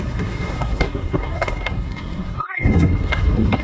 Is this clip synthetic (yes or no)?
yes